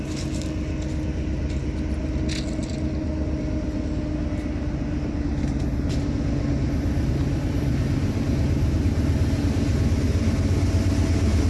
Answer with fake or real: real